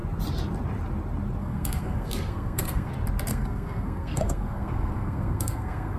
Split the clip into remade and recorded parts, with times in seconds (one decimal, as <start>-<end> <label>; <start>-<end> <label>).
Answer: 0.0-1.4 recorded; 1.4-2.9 remade; 2.9-3.3 recorded; 3.3-6.0 remade